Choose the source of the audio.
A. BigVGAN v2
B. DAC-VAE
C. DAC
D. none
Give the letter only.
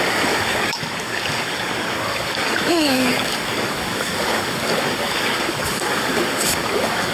C